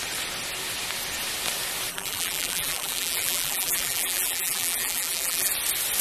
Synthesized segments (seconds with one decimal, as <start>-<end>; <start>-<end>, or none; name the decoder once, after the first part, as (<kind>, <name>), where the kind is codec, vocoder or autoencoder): 1.9-5.5 (vocoder, BigVGAN v2)